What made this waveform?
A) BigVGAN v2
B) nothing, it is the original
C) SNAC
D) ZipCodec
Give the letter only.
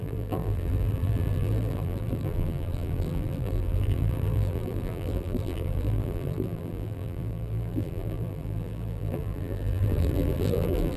A